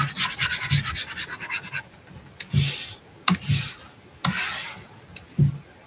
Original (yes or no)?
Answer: yes